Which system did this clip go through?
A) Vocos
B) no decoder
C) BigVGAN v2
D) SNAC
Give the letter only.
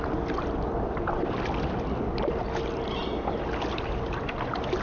B